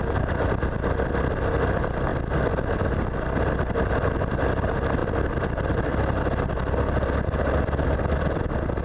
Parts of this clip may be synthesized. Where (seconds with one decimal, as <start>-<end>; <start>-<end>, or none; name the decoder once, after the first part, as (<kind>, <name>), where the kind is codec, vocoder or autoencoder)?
5.0-8.4 (vocoder, BigVGAN v2)